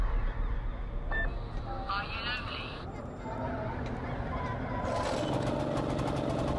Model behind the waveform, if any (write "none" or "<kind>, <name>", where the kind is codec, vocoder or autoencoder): none